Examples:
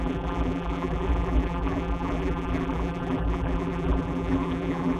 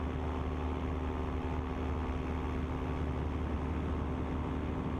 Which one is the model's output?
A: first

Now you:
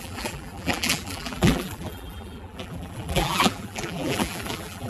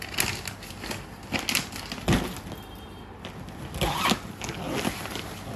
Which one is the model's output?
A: first